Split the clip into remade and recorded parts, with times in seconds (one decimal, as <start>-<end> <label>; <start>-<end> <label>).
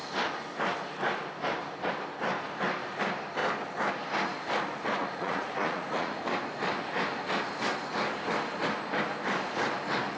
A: 0.0-5.0 recorded; 5.0-6.2 remade; 6.2-10.2 recorded